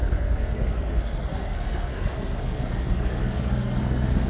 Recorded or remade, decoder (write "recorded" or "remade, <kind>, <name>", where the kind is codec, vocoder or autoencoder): remade, codec, SNAC